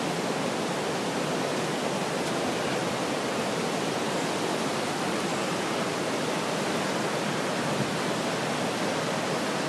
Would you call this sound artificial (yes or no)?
no